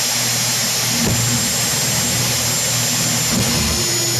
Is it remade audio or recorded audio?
recorded